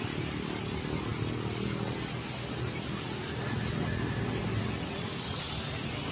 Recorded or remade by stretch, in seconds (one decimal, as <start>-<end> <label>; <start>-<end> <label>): 0.0-6.1 recorded